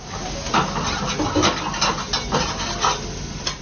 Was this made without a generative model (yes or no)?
yes